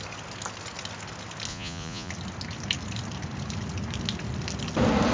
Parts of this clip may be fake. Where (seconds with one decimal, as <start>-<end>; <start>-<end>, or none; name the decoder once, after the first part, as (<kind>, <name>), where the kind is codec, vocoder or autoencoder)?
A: 1.5-2.1 (vocoder, Vocos)